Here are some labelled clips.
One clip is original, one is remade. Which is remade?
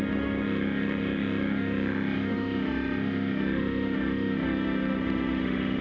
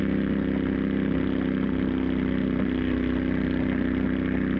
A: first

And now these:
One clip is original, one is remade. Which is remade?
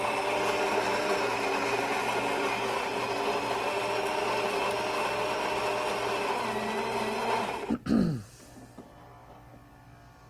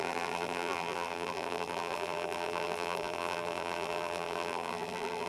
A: second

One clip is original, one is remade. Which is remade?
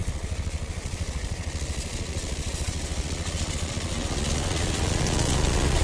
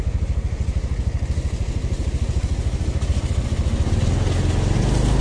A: first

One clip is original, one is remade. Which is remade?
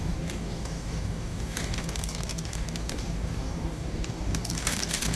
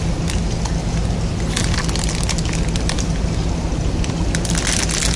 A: first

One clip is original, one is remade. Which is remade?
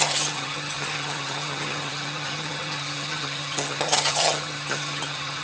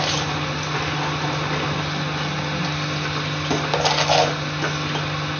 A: first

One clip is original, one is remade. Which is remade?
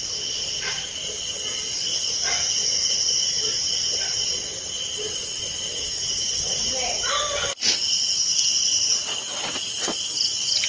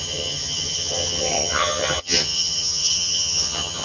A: second